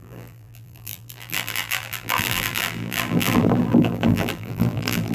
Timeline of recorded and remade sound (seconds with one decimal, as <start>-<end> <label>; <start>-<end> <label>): 0.0-5.1 remade